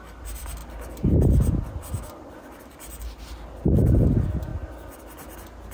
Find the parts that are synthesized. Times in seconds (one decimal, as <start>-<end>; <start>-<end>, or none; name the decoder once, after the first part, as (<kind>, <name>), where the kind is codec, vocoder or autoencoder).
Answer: none